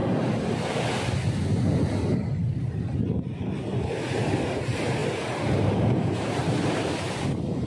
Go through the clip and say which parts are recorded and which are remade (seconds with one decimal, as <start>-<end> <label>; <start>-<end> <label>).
0.0-4.6 recorded; 4.6-7.7 remade